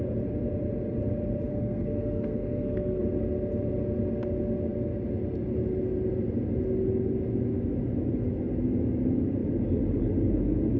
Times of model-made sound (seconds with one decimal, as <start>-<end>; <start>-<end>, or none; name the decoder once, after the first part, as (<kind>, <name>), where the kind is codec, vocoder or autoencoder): 1.5-3.0 (codec, SNAC)

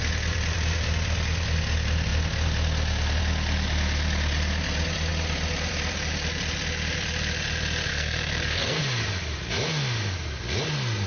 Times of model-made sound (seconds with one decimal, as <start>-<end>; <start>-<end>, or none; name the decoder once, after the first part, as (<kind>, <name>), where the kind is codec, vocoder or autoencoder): 7.9-8.8 (codec, SNAC)

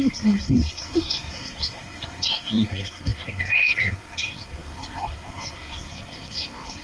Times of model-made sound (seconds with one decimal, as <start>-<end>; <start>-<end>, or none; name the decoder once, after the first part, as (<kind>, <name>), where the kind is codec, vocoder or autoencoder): 0.0-6.8 (codec, SNAC)